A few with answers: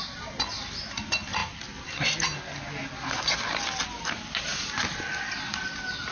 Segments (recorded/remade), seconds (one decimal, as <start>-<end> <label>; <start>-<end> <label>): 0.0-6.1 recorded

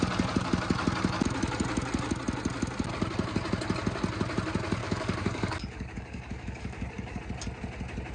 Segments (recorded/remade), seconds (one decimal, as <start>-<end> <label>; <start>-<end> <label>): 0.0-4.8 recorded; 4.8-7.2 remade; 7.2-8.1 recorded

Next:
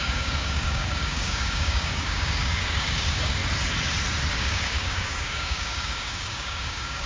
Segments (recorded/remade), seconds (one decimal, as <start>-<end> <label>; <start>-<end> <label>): 0.0-3.4 remade; 3.4-4.3 recorded; 4.3-7.1 remade

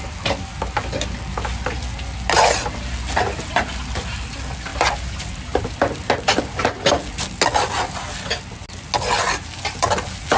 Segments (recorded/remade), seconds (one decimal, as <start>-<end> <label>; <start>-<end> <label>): 0.0-10.4 recorded